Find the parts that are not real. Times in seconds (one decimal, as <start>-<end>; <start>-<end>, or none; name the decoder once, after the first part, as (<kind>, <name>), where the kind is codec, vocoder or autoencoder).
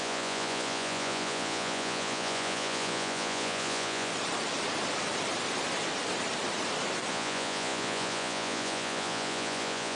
0.0-4.1 (vocoder, Vocos); 7.1-10.0